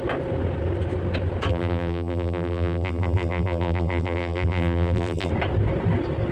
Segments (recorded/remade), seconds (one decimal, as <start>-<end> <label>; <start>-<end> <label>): 0.0-1.5 recorded; 1.5-5.3 remade; 5.3-6.3 recorded